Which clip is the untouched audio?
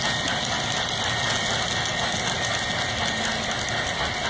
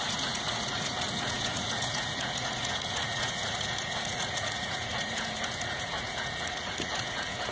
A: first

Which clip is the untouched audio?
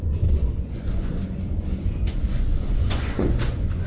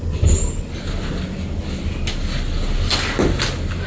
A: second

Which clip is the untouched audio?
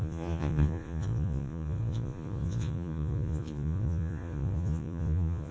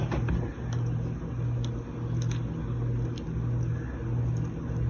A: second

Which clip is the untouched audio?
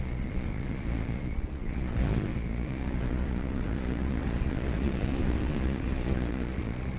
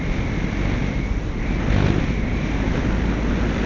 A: second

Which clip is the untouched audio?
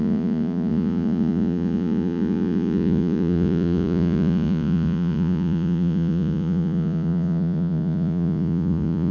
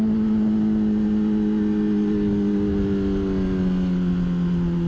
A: second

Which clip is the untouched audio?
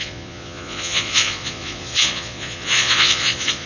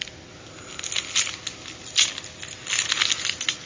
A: second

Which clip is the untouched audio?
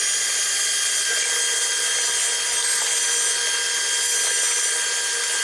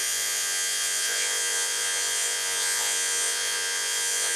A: first